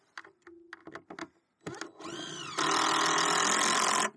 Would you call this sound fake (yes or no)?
no